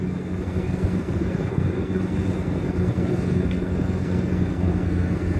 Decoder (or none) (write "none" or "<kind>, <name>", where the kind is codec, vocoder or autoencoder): codec, SNAC